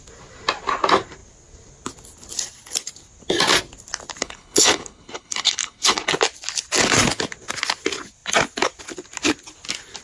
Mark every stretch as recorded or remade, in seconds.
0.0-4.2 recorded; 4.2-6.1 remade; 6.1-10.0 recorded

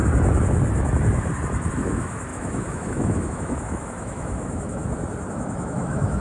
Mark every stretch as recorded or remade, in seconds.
0.0-1.7 recorded; 1.7-4.8 remade; 4.8-5.3 recorded; 5.3-6.2 remade

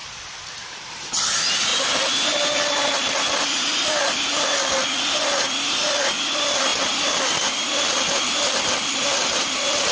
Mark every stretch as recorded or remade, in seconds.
0.0-1.7 remade; 1.7-4.9 recorded; 4.9-9.9 remade

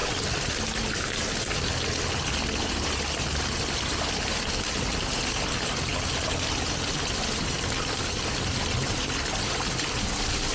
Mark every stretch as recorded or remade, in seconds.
0.0-10.5 recorded